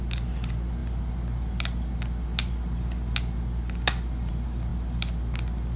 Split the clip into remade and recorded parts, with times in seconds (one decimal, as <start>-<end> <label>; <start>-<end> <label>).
0.0-5.8 recorded